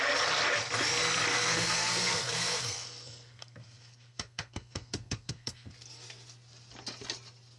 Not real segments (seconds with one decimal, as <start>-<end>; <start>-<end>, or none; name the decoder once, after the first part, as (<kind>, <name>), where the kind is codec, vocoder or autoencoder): 1.3-5.7 (codec, SNAC)